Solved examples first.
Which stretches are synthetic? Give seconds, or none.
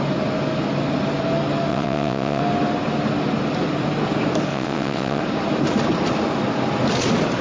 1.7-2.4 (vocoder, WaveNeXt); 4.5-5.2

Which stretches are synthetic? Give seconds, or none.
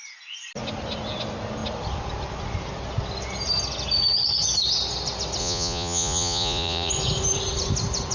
5.4-6.9 (vocoder, Vocos)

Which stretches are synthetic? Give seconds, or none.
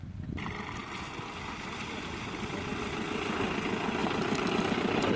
none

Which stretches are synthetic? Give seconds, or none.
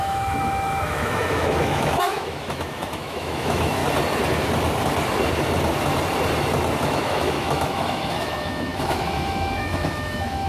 0.0-3.8 (autoencoder, DAC-VAE); 6.8-10.5